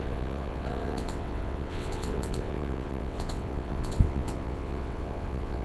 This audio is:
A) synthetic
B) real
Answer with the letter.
A